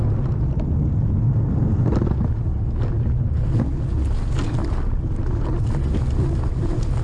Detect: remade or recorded recorded